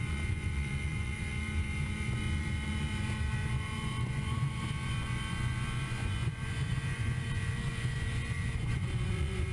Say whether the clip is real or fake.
fake